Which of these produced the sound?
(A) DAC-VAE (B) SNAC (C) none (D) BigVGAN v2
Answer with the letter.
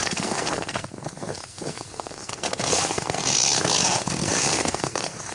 B